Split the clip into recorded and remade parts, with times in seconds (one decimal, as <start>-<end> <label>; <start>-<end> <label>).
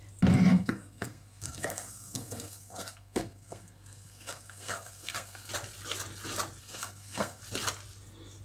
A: 0.0-0.5 recorded; 0.5-5.5 remade; 5.5-6.6 recorded; 6.6-7.4 remade; 7.4-8.4 recorded